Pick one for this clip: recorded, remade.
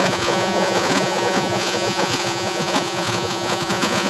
remade